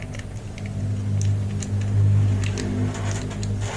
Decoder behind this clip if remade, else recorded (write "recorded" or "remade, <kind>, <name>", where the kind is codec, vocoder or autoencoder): recorded